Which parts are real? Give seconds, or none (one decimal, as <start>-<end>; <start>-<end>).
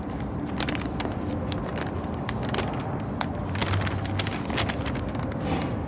0.0-5.9